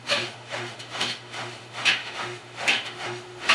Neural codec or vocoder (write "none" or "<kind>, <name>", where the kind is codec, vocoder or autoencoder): autoencoder, DAC-VAE